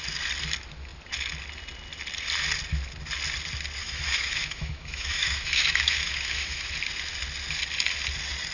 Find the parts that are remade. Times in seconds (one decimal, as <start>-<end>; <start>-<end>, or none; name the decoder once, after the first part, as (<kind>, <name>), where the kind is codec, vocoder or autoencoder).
3.8-6.7 (autoencoder, DAC-VAE)